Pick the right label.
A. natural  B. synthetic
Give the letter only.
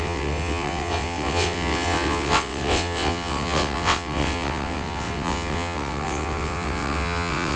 B